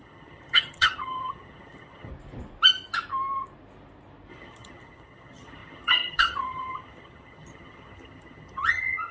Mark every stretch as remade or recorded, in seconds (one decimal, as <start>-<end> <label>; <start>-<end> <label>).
0.0-2.1 remade; 2.1-4.3 recorded; 4.3-9.1 remade